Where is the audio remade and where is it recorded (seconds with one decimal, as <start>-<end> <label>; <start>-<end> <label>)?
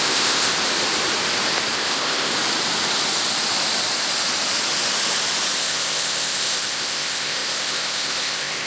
0.0-0.5 remade; 0.5-1.7 recorded; 1.7-2.3 remade; 2.3-5.6 recorded; 5.6-8.7 remade